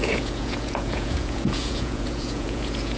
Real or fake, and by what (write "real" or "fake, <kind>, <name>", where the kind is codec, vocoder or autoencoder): fake, vocoder, Vocos